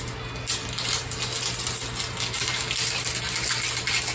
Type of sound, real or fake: real